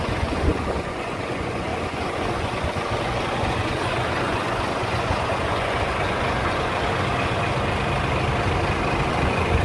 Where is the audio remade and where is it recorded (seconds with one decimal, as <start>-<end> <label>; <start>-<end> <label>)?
0.0-7.5 remade; 7.5-9.1 recorded; 9.1-9.6 remade